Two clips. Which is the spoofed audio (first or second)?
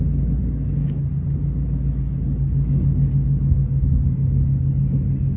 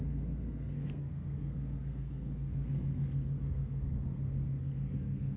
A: second